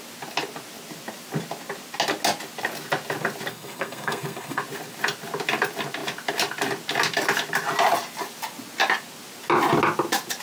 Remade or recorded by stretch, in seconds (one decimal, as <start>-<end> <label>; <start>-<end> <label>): 0.0-3.5 recorded; 3.5-4.6 remade; 4.6-10.4 recorded